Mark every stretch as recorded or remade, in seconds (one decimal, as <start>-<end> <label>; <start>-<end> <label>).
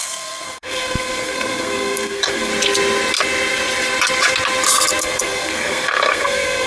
0.0-2.5 remade; 2.5-5.0 recorded; 5.0-6.7 remade